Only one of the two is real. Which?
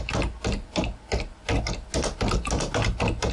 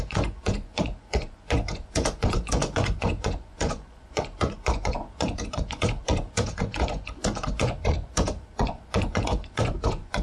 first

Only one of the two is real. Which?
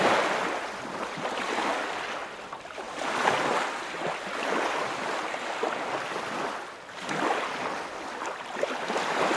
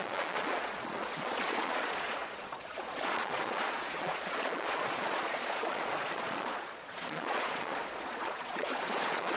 first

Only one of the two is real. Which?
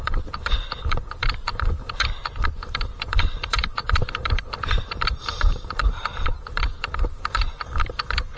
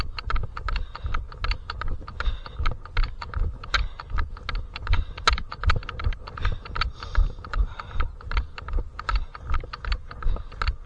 second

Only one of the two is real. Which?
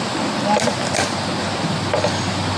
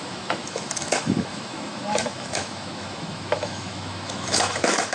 first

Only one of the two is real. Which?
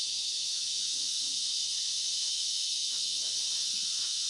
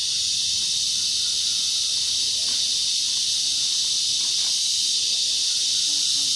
second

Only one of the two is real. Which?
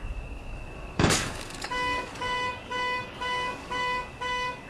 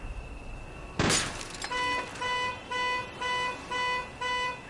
second